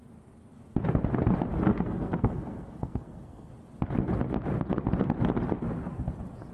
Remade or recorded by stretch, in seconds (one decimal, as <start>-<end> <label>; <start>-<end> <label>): 0.0-1.7 recorded; 1.7-3.5 remade; 3.5-6.5 recorded